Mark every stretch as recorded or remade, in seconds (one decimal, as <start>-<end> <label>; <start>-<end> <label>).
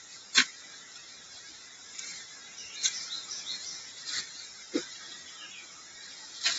0.0-1.0 remade; 1.0-2.3 recorded; 2.3-6.6 remade